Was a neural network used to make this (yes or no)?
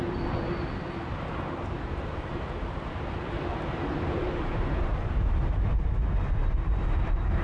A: yes